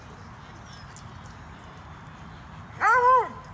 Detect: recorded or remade recorded